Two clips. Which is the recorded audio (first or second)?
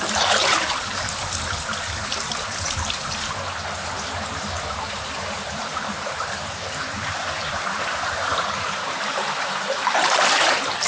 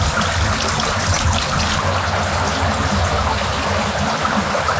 second